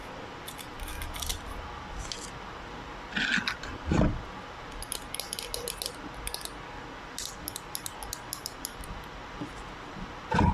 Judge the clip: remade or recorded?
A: recorded